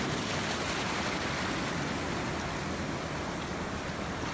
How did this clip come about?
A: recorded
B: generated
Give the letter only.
A